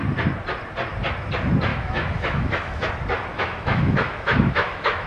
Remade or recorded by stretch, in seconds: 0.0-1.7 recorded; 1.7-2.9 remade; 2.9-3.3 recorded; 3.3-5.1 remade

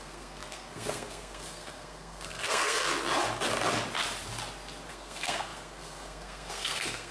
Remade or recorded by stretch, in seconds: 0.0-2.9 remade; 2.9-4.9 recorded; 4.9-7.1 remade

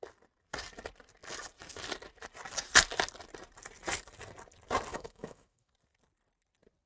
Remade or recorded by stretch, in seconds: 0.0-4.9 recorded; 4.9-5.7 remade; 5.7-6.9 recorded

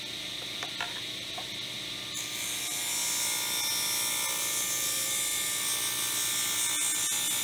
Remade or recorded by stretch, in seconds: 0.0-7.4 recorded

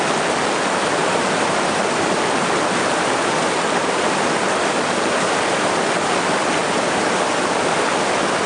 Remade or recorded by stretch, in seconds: 0.0-1.0 recorded; 1.0-6.1 remade; 6.1-8.5 recorded